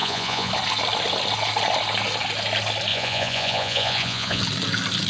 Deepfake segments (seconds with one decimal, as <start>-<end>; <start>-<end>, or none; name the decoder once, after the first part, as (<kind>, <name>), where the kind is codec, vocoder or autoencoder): 0.0-0.5 (vocoder, Vocos); 2.9-4.4